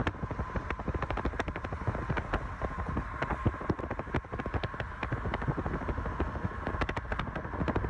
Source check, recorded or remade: recorded